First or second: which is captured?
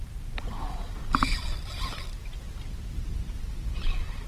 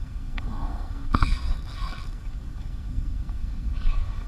first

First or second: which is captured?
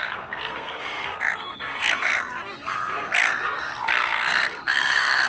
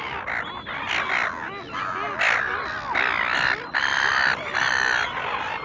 second